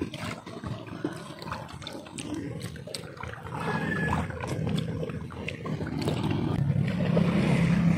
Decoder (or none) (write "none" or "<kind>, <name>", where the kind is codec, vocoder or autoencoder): none